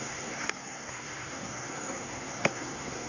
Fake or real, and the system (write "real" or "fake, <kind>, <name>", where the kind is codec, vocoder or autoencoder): fake, codec, SNAC